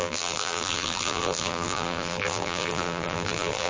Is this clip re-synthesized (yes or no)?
yes